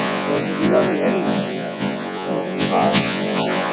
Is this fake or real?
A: fake